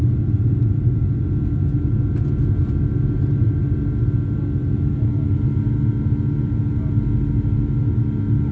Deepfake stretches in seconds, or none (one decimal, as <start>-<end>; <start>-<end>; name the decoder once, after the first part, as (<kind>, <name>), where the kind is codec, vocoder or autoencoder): none